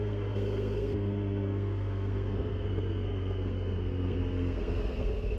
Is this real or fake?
fake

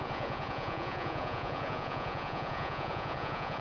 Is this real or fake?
fake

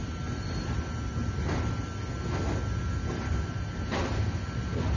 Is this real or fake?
real